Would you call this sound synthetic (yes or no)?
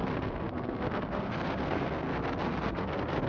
yes